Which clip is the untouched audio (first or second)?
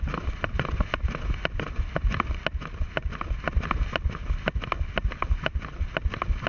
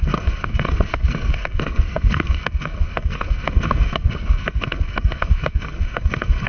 first